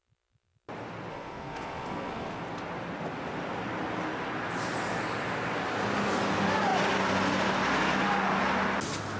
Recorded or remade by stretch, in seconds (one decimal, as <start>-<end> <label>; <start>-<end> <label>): 0.0-1.1 recorded; 1.1-2.4 remade; 2.4-9.2 recorded